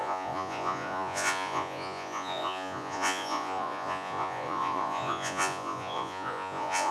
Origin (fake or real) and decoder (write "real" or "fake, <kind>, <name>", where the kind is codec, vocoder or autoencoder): fake, vocoder, Vocos